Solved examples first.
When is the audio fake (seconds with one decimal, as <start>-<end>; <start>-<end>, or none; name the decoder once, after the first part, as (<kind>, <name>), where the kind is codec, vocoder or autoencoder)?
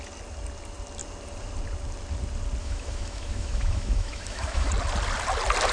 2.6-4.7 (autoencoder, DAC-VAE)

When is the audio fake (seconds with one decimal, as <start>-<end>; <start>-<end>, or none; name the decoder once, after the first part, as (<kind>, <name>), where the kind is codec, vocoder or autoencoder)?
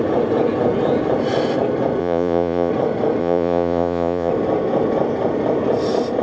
2.0-2.7 (vocoder, Vocos); 3.2-4.3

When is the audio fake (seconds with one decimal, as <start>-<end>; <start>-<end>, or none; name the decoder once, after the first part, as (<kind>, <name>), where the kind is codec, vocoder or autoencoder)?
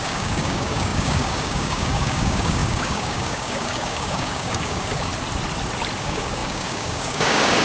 0.0-5.1 (codec, DAC); 6.0-7.6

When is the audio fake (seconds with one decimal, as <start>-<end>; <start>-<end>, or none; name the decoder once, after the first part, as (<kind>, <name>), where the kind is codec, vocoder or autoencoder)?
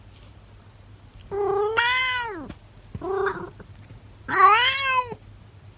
none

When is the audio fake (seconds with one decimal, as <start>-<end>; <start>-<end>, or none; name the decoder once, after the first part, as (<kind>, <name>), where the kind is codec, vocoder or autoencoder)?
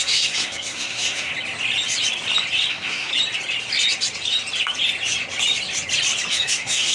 0.0-1.3 (codec, SNAC); 2.7-3.1; 6.3-6.9